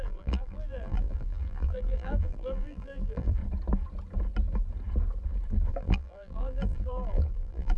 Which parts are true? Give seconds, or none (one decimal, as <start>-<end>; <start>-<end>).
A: 3.4-5.7

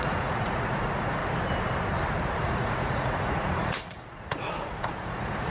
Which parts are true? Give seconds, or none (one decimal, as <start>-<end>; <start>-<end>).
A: 1.2-2.4

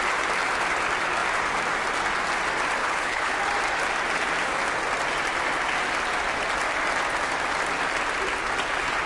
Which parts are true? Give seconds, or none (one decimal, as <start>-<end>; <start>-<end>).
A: 0.0-2.8; 3.3-9.1

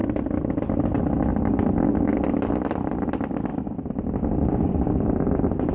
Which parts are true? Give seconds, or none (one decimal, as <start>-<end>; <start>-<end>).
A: 3.1-3.5

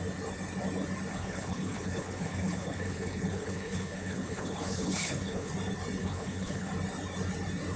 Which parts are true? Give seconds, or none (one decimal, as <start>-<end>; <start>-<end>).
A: 0.0-1.1; 5.5-6.0; 6.7-7.8

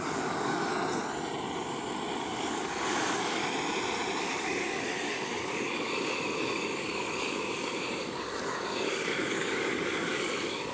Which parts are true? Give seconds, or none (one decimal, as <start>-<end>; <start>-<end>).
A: 0.7-2.2; 3.4-4.2

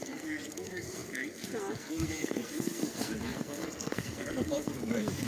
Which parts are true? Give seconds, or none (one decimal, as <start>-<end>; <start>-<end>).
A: none

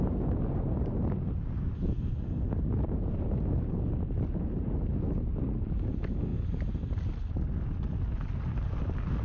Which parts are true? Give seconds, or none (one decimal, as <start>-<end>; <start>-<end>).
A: 0.0-9.2